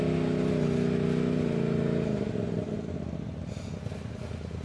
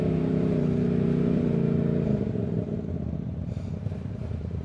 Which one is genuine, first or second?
first